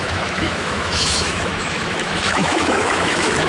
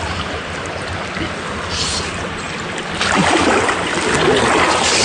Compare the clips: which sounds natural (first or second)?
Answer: second